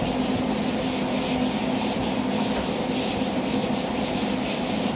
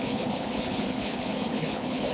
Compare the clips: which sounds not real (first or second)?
second